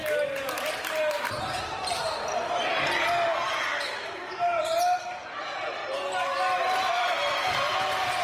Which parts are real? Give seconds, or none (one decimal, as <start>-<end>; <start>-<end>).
0.0-0.8; 2.0-3.9; 5.8-6.6